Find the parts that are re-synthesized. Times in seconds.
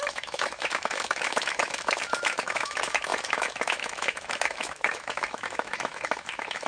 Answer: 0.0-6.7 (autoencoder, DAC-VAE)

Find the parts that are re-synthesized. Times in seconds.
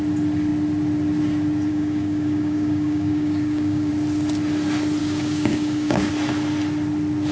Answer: 1.7-3.9 (codec, DAC); 5.0-6.1